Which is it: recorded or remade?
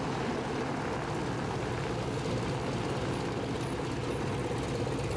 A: recorded